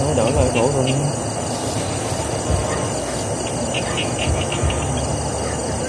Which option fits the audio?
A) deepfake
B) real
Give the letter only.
B